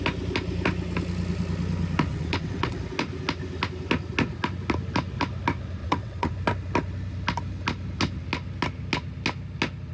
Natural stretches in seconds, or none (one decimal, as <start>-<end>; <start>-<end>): 0.0-2.1; 2.8-5.8; 6.3-9.9